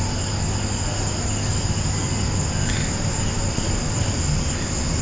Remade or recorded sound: recorded